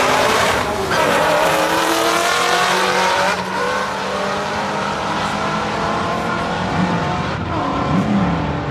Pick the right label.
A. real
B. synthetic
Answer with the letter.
B